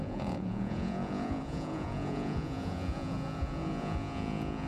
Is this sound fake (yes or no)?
yes